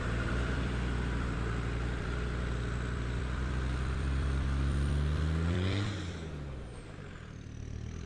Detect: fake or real fake